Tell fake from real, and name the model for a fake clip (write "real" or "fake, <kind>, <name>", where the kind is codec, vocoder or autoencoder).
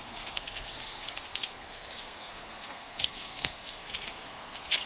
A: fake, codec, SNAC